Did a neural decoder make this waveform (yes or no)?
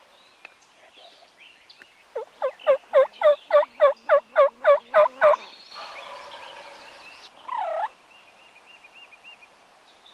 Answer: no